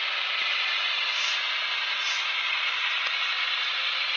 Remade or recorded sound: recorded